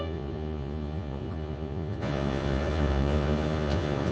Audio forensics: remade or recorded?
remade